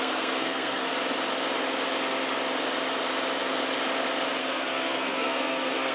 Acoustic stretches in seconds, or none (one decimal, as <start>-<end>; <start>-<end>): 0.9-4.4